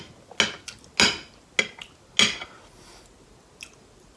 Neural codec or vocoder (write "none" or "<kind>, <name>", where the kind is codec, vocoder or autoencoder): none